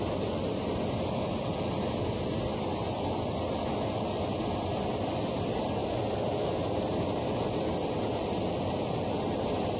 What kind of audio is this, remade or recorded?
recorded